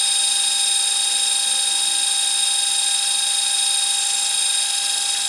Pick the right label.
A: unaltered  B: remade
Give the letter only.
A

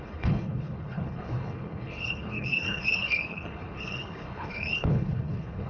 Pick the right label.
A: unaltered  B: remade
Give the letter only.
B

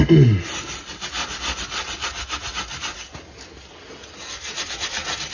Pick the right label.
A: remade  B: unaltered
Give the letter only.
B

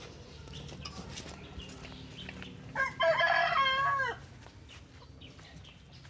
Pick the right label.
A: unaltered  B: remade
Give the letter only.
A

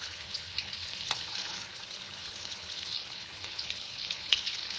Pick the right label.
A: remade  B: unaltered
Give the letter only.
A